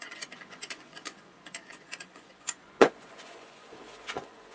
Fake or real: fake